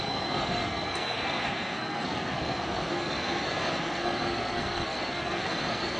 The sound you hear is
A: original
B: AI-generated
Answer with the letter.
B